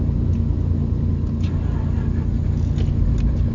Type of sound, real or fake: real